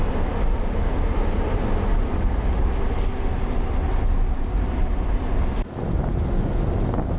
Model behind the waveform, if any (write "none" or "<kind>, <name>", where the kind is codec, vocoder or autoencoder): none